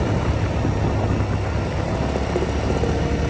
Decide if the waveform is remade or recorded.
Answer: recorded